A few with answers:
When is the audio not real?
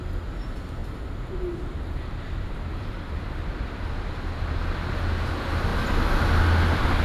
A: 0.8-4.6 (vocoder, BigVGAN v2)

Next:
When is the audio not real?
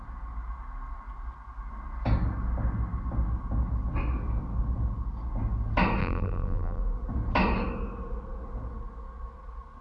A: 6.0-6.8 (vocoder, BigVGAN v2)